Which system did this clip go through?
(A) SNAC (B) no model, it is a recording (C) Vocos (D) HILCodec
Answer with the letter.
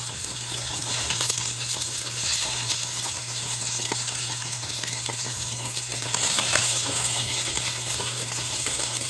A